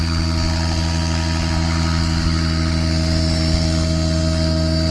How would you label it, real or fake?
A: real